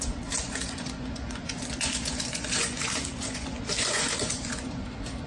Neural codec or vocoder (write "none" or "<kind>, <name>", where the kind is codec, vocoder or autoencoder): vocoder, Vocos